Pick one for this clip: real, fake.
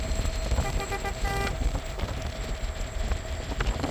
real